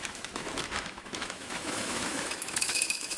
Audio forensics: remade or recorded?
remade